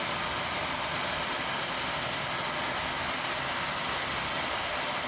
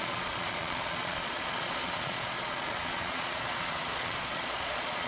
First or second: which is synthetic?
second